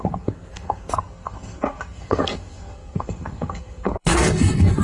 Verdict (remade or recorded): remade